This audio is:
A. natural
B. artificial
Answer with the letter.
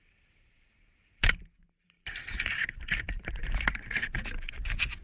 B